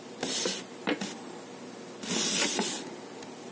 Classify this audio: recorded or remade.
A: recorded